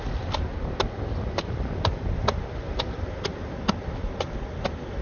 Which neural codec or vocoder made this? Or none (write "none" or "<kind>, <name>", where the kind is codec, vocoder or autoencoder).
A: none